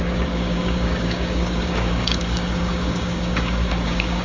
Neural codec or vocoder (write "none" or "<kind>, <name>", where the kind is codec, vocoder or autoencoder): codec, DAC